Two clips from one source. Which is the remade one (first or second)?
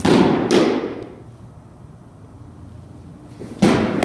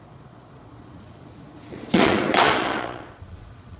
second